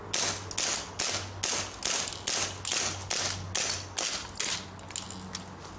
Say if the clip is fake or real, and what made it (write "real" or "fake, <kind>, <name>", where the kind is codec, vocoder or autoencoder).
real